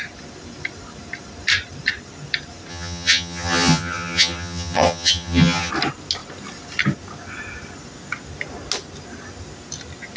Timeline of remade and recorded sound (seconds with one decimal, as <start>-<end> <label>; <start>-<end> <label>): 0.0-2.7 recorded; 2.7-5.7 remade; 5.7-10.2 recorded